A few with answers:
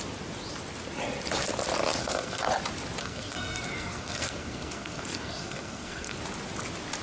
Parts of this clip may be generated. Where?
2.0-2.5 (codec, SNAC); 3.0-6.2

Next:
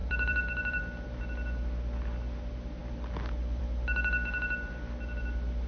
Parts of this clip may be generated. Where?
0.0-0.8 (vocoder, BigVGAN v2)

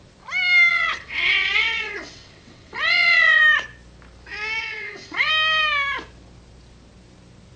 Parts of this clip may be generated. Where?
0.7-3.4 (vocoder, WaveNeXt); 4.6-5.3

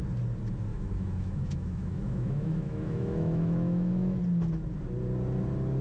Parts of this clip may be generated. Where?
0.7-4.2 (autoencoder, DAC-VAE)

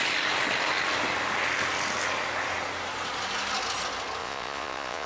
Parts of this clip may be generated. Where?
4.2-5.1 (vocoder, Vocos)

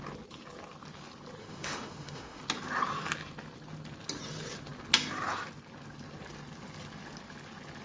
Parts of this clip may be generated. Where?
1.4-2.4 (autoencoder, DAC-VAE)

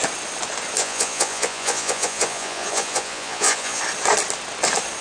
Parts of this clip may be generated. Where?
0.8-3.8 (vocoder, Vocos)

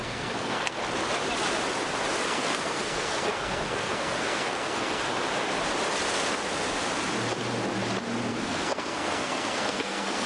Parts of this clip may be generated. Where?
0.0-0.8 (codec, SNAC); 2.2-5.0; 8.3-10.3